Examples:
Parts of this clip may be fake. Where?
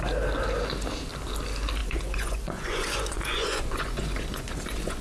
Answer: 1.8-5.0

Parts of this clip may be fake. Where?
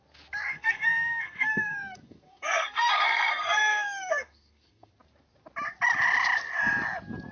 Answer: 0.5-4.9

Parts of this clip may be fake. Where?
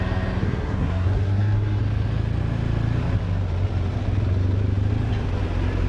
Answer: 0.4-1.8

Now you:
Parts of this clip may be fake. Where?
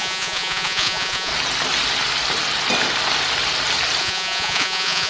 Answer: 0.0-1.3; 4.0-5.1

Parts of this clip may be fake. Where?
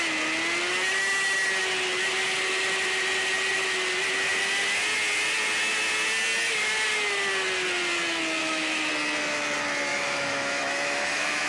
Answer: 8.4-8.9; 9.9-11.5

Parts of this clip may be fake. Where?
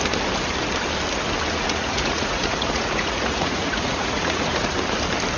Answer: 1.5-4.7